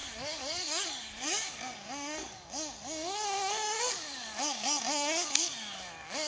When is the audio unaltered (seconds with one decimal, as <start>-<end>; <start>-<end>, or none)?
none